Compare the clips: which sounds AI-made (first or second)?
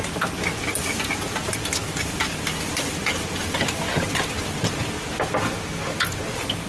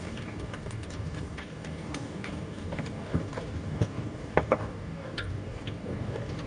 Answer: second